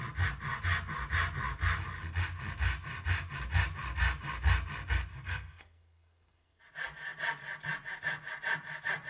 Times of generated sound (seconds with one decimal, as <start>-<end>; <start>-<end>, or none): 5.1-6.6